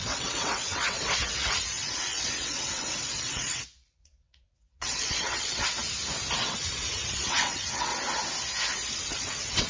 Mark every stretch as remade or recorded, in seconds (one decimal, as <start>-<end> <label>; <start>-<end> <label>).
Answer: 0.0-5.6 remade; 5.6-6.4 recorded; 6.4-7.9 remade; 7.9-9.0 recorded; 9.0-9.7 remade